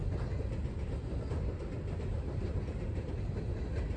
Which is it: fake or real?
real